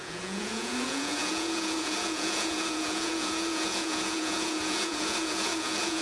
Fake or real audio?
fake